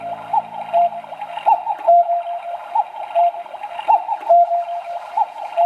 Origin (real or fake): real